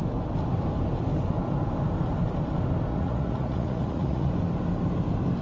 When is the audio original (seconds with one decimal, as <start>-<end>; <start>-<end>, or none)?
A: 0.0-2.9; 4.3-5.4